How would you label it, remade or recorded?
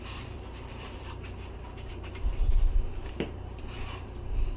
remade